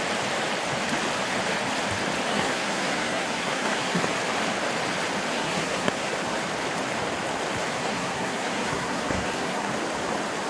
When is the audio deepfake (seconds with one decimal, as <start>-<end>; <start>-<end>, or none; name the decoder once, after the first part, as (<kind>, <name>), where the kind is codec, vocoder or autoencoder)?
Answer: 2.3-4.0 (codec, SNAC); 5.3-6.1; 7.7-9.7